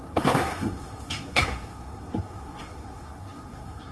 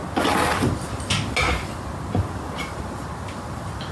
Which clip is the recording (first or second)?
second